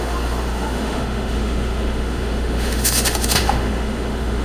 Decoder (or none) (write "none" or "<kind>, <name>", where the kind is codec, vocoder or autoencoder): autoencoder, DAC-VAE